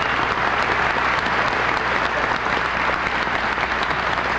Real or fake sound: real